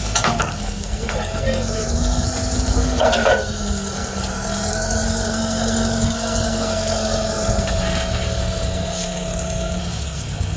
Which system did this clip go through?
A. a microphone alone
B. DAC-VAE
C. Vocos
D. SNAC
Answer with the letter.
D